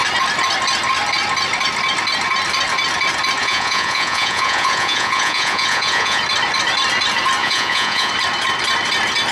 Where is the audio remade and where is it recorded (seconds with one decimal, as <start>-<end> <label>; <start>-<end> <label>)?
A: 0.0-3.4 recorded; 3.4-6.2 remade; 6.2-7.4 recorded; 7.4-8.1 remade; 8.1-9.3 recorded